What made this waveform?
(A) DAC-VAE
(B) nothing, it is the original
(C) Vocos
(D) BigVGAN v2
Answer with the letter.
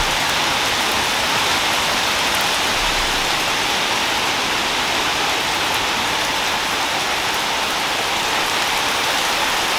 B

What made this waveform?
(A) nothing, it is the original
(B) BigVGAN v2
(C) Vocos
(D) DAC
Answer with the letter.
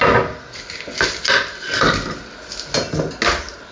A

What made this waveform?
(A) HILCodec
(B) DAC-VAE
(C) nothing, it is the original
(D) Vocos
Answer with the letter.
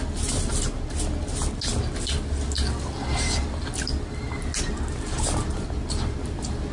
C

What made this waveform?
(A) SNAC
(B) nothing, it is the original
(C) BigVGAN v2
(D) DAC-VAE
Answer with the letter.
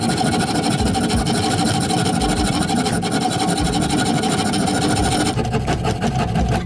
B